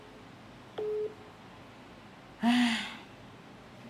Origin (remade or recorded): recorded